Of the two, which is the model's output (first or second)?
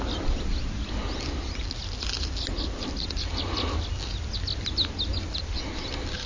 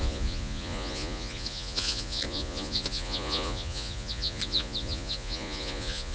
second